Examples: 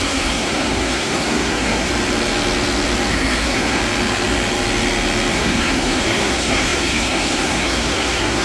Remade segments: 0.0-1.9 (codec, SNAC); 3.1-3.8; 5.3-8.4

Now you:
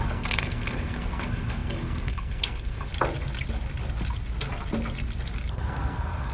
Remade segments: 0.0-2.9 (codec, SNAC); 5.5-6.3